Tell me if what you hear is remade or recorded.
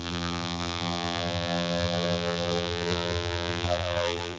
remade